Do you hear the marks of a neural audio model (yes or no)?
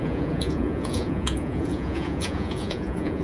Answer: yes